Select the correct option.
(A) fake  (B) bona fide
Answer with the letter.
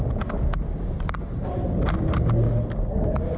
B